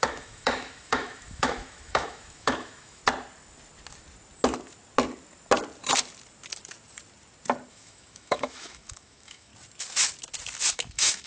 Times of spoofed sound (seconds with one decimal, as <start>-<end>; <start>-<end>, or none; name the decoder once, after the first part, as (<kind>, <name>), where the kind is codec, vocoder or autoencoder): 0.0-3.0 (autoencoder, DAC-VAE); 7.7-9.5; 10.7-11.3

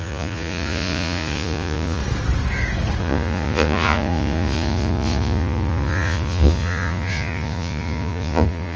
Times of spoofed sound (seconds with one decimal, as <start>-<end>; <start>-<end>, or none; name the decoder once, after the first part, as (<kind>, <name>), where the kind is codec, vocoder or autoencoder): 0.0-2.0 (vocoder, Vocos); 3.0-8.8

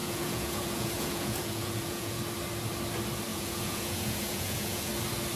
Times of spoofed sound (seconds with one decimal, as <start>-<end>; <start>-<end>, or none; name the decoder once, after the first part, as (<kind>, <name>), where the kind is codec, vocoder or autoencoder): 0.0-2.2 (vocoder, Vocos); 3.3-4.9

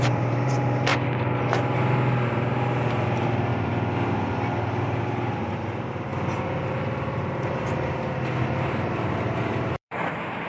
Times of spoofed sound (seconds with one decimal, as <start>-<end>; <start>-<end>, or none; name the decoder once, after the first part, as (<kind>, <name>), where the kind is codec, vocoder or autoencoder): 0.0-0.9 (vocoder, BigVGAN v2); 2.9-6.1; 9.7-10.5

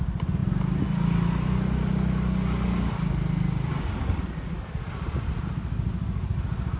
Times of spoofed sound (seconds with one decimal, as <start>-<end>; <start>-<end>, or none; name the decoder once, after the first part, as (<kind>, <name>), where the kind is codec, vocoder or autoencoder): none

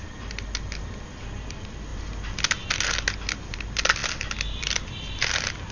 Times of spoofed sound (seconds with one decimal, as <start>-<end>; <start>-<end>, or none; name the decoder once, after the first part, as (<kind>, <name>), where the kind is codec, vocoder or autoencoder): none

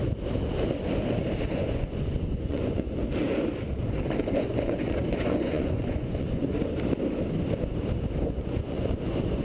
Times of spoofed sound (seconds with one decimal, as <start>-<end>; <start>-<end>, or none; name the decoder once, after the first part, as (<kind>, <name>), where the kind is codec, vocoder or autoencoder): 1.5-3.0 (vocoder, Vocos); 4.3-6.4; 8.2-9.4